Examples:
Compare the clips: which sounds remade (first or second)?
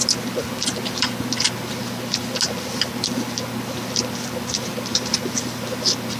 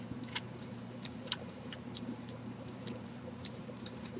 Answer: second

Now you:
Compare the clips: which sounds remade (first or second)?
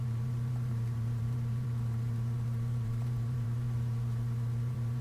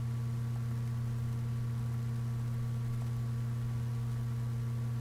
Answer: first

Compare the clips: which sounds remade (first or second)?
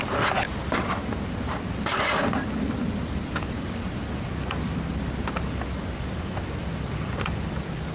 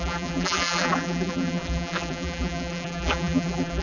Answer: second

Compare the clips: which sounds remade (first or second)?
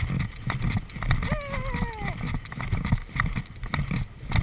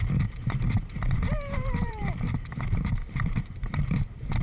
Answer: second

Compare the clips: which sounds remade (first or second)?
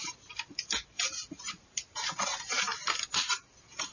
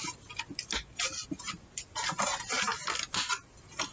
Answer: first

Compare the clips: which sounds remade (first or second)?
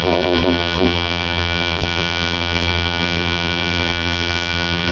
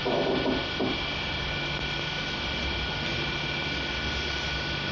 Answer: first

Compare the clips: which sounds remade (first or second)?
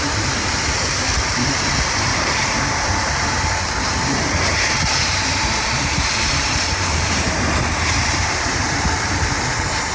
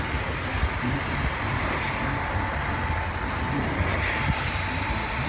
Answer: first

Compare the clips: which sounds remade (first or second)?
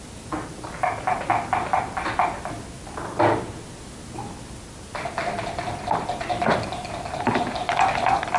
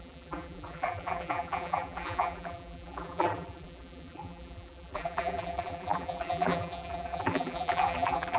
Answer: second